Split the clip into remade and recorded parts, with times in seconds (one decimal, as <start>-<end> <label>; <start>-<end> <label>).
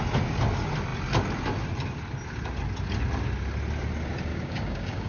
0.0-4.3 recorded; 4.3-5.1 remade